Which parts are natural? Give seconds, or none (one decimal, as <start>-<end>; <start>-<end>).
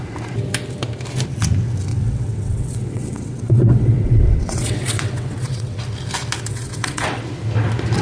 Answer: 0.0-1.9; 5.8-6.5; 7.2-8.0